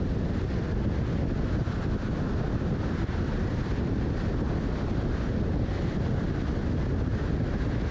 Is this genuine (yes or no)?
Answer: yes